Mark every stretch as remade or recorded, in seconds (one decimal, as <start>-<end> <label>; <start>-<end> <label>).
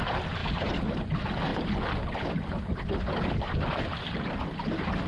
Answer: 0.0-5.1 recorded